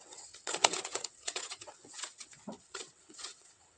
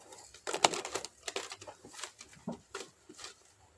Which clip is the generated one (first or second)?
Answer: first